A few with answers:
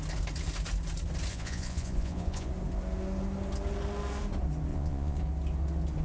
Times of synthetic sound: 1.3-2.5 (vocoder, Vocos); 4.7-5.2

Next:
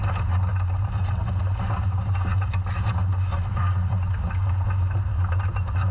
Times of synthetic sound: none